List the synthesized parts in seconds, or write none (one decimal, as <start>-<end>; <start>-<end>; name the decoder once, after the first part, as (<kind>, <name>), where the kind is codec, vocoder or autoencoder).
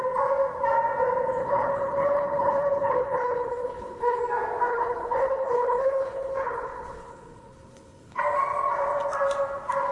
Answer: 1.4-4.2 (codec, HILCodec); 4.7-8.2